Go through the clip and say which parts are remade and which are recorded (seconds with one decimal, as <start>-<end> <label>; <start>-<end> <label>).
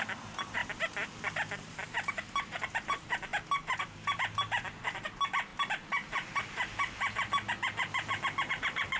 0.0-0.6 remade; 0.6-1.4 recorded; 1.4-3.3 remade; 3.3-3.8 recorded; 3.8-5.5 remade; 5.5-8.5 recorded; 8.5-9.0 remade